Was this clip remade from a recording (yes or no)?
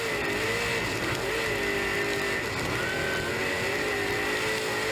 no